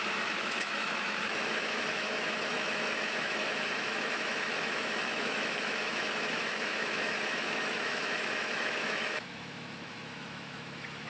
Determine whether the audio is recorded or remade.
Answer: remade